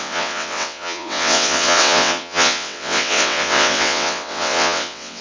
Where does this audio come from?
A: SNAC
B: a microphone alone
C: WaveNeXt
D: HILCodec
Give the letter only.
C